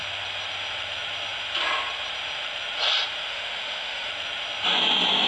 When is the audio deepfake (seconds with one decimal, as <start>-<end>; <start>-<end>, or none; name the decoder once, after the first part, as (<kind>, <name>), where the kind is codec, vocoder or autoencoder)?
3.3-4.1 (autoencoder, DAC-VAE)